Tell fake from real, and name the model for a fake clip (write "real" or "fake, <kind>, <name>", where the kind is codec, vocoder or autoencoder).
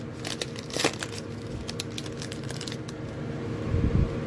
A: real